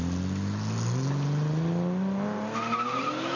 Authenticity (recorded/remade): recorded